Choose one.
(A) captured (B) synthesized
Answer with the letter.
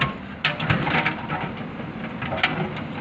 A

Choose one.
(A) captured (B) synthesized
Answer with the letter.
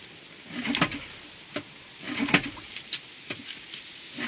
A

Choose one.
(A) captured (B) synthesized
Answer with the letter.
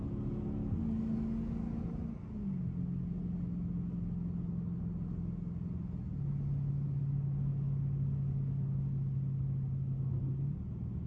A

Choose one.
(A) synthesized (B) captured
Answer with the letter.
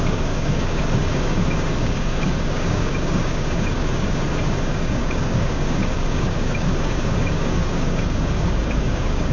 A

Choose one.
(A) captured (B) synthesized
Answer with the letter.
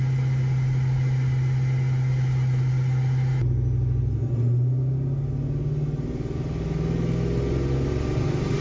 A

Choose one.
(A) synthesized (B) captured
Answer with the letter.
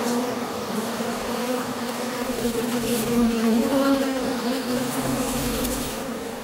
A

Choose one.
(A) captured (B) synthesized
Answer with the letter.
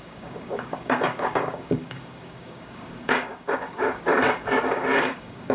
B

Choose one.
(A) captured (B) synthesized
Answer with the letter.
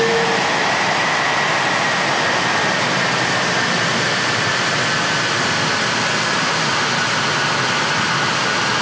A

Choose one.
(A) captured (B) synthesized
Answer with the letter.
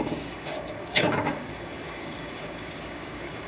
B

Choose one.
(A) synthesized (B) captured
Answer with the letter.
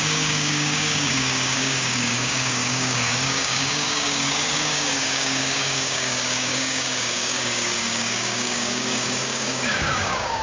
A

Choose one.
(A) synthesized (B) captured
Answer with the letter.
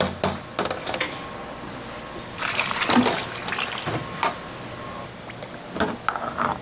B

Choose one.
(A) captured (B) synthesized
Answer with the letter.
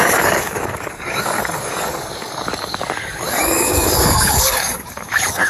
B